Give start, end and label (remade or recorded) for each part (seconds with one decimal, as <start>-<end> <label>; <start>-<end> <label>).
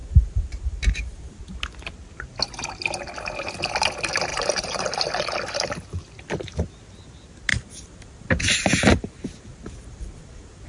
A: 0.0-1.4 remade; 1.4-4.3 recorded; 4.3-5.1 remade; 5.1-7.5 recorded; 7.5-10.7 remade